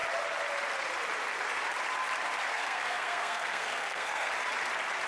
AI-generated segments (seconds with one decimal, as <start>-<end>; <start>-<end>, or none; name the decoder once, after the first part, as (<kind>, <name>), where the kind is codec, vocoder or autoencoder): 2.5-4.3 (codec, SNAC)